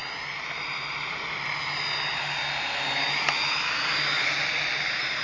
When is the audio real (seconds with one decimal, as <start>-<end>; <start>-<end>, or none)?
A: 0.0-5.2